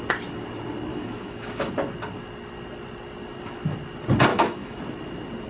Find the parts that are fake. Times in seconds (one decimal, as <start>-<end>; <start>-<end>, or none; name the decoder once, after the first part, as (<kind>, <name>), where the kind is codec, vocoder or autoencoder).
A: 0.9-1.7 (autoencoder, DAC-VAE); 4.3-4.8